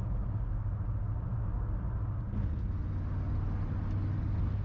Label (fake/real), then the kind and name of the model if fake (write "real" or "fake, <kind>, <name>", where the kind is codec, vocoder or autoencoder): real